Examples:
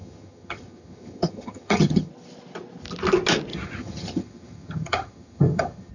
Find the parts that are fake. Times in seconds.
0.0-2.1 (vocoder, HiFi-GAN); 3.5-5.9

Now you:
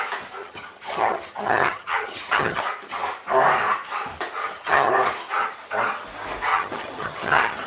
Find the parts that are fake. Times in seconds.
0.4-2.6 (vocoder, HiFi-GAN); 4.4-4.9; 6.5-7.7

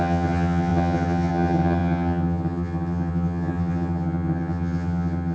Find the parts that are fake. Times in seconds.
0.0-5.3 (vocoder, HiFi-GAN)

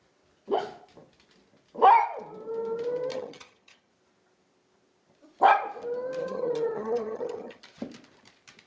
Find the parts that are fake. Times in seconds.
3.1-3.9 (vocoder, HiFi-GAN); 6.2-7.6

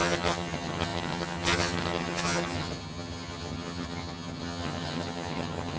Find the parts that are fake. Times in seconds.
0.0-5.8 (vocoder, HiFi-GAN)